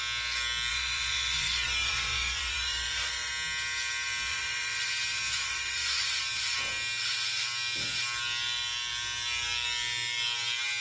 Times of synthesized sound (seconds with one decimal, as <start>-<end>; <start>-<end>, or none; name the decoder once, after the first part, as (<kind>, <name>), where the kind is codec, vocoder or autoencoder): 0.7-3.3 (vocoder, Vocos); 4.3-4.9; 5.4-6.2